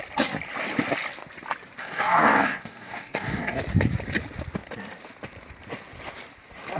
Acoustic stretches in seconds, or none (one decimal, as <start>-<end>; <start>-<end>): 0.0-1.8; 3.6-6.8